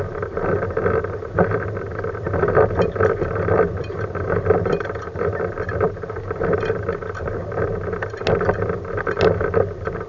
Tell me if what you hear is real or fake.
real